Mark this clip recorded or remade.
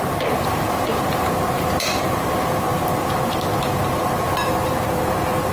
remade